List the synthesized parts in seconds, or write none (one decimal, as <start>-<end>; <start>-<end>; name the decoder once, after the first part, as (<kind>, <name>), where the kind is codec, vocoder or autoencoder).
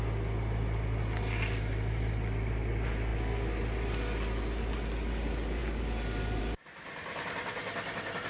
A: none